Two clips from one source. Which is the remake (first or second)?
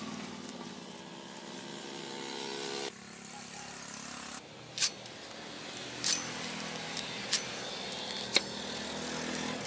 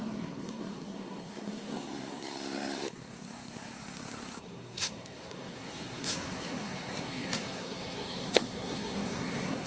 second